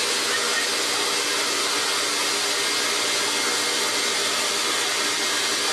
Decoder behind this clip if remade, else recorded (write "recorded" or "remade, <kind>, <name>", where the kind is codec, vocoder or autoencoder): recorded